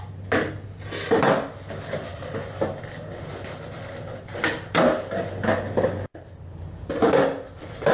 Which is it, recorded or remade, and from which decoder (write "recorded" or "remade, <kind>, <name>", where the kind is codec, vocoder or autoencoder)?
recorded